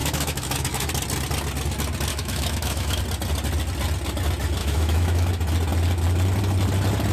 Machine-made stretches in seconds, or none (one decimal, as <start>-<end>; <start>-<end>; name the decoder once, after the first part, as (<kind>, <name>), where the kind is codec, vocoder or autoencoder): 0.0-0.9 (autoencoder, DAC-VAE); 2.1-3.0; 4.6-5.3